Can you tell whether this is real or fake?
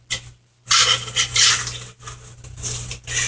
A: real